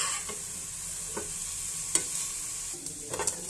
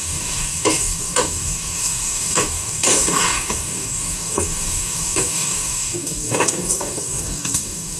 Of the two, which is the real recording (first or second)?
first